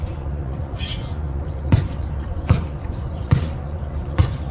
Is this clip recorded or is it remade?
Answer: remade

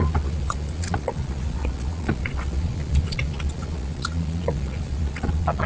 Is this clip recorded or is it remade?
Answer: remade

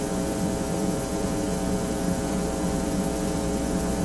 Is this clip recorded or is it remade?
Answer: remade